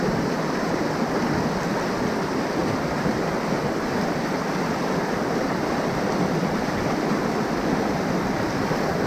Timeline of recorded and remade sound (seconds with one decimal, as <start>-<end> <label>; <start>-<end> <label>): 0.0-2.6 remade; 2.6-5.4 recorded; 5.4-9.1 remade